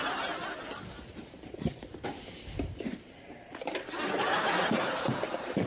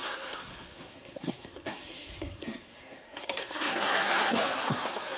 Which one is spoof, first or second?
second